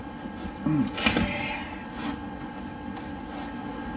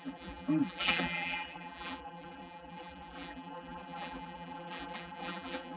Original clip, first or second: first